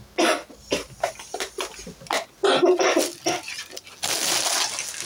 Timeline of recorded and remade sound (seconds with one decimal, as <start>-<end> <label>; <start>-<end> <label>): 0.0-5.0 recorded